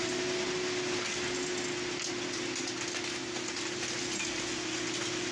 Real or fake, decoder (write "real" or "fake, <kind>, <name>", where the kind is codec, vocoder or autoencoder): real